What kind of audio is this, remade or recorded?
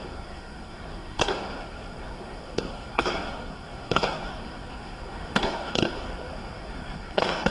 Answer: remade